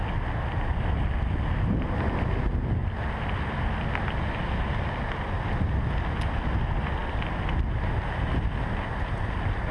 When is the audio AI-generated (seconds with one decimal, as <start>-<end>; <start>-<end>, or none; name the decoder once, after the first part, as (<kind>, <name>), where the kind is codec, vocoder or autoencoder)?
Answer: none